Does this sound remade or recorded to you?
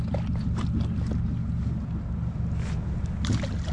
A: recorded